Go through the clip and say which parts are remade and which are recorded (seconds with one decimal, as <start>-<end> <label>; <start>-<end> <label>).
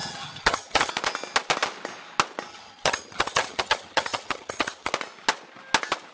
0.0-0.9 remade; 0.9-2.5 recorded; 2.5-4.9 remade; 4.9-6.1 recorded